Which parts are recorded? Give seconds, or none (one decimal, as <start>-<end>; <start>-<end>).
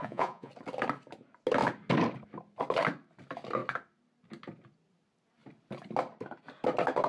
0.5-7.1